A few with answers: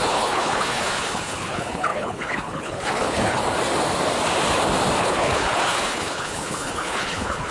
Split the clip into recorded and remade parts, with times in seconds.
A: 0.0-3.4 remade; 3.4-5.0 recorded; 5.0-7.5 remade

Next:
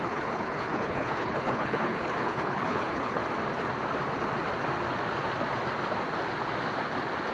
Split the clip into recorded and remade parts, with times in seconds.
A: 0.0-3.2 remade; 3.2-7.3 recorded

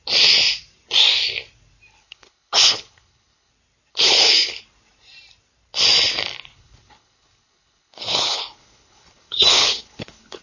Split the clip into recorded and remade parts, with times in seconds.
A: 0.0-1.9 recorded; 1.9-3.5 remade; 3.5-3.9 recorded; 3.9-4.6 remade; 4.6-6.5 recorded; 6.5-10.4 remade